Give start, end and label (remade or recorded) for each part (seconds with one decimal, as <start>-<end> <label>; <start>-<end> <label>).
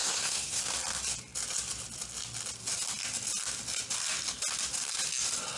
0.0-0.6 remade; 0.6-5.6 recorded